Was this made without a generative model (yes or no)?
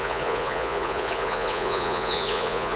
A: no